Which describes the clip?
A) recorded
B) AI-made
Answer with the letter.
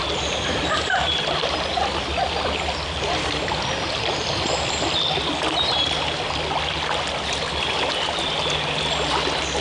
A